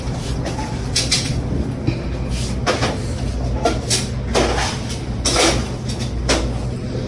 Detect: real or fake real